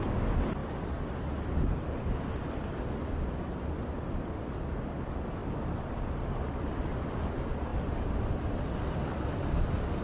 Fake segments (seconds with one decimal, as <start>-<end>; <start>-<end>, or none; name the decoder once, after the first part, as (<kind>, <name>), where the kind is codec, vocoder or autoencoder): none